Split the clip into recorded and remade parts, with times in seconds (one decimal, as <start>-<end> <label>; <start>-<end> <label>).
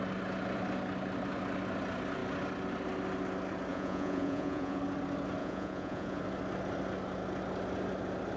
0.0-3.7 recorded; 3.7-4.8 remade; 4.8-5.4 recorded; 5.4-6.2 remade; 6.2-8.4 recorded